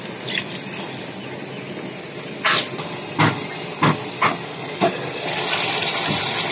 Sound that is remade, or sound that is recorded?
recorded